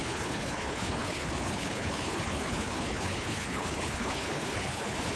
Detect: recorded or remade remade